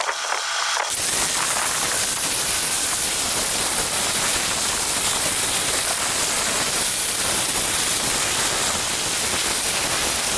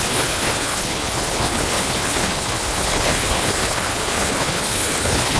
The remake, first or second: second